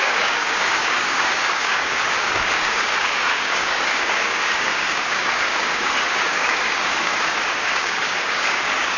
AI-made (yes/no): yes